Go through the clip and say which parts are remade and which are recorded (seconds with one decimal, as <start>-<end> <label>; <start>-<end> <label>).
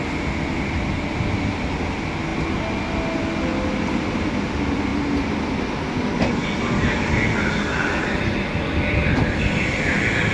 0.0-10.3 recorded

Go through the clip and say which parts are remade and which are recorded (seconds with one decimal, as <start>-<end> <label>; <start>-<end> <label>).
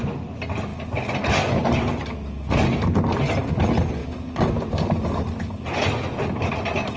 0.0-7.0 recorded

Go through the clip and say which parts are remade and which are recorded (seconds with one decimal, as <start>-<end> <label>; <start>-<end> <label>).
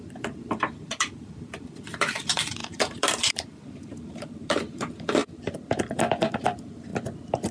0.0-6.9 remade; 6.9-7.5 recorded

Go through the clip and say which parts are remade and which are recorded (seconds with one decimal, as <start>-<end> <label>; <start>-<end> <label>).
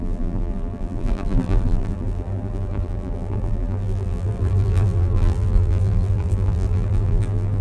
0.0-7.6 remade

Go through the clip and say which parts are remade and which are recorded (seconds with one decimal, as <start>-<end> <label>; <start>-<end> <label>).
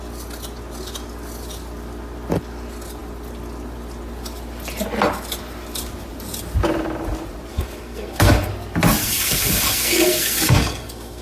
0.0-7.5 recorded; 7.5-8.5 remade; 8.5-9.0 recorded; 9.0-11.2 remade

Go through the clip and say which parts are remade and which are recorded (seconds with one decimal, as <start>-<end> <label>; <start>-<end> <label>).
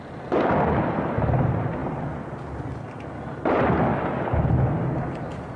0.0-5.6 recorded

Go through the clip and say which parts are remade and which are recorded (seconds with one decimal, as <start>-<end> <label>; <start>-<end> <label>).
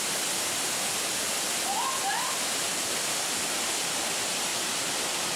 0.0-2.7 recorded; 2.7-3.6 remade; 3.6-4.5 recorded; 4.5-5.4 remade